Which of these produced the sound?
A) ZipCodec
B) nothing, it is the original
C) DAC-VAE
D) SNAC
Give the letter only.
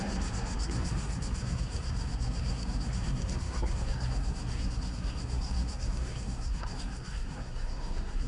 D